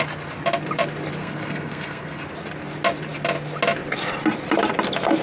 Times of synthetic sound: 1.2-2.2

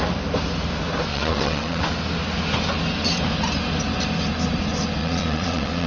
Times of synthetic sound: 1.1-1.8; 5.0-5.9

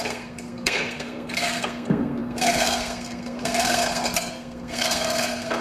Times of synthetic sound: 0.0-5.6

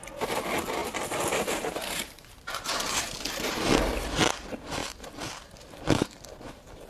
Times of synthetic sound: 0.8-3.2; 4.8-5.7

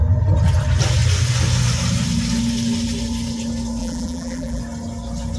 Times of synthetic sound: 3.8-4.6

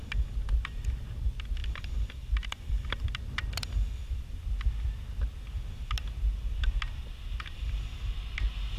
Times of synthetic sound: none

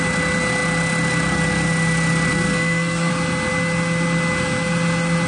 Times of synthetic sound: 2.3-3.1